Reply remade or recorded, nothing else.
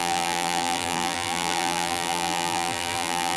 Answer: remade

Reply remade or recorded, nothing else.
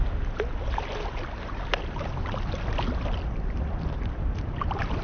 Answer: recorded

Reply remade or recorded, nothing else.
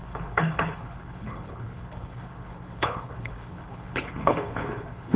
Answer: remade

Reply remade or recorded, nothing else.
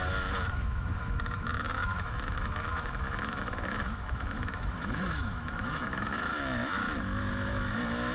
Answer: remade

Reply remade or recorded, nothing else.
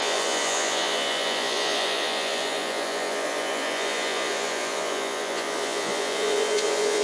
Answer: remade